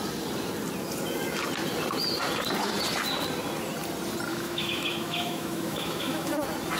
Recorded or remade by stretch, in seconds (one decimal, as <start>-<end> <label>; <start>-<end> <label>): 0.0-4.3 recorded; 4.3-6.3 remade; 6.3-6.8 recorded